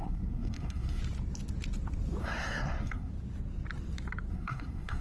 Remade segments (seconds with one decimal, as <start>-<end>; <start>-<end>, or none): 0.0-1.0; 2.2-3.1; 4.3-5.0